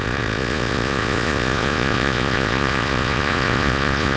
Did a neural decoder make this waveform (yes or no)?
yes